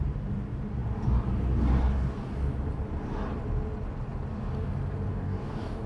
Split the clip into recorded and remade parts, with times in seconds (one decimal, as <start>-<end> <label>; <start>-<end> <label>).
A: 0.0-5.1 recorded; 5.1-5.9 remade